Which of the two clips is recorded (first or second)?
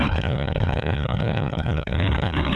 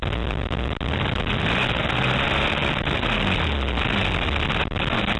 second